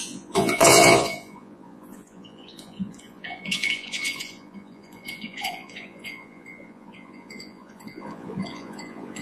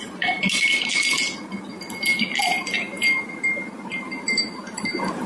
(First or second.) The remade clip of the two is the first